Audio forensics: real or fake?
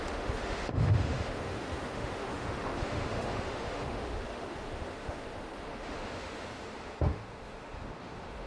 fake